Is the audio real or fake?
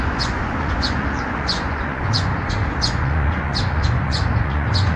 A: fake